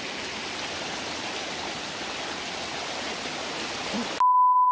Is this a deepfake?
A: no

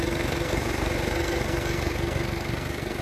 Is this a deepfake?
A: yes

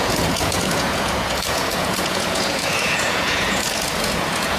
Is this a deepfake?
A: yes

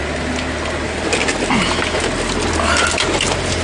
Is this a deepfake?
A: no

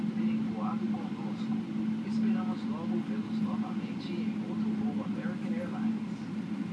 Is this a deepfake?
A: no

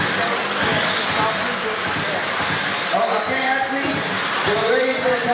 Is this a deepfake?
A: no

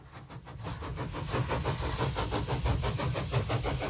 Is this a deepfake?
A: no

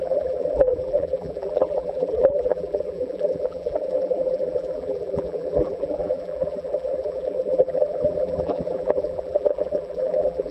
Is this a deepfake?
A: yes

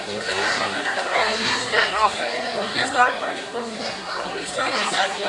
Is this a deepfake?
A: yes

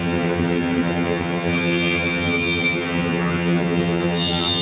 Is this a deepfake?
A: yes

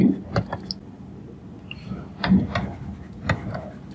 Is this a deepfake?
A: no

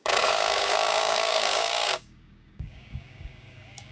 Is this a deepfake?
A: yes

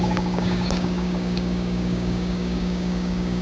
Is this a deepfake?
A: yes